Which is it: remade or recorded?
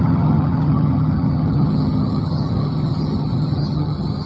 remade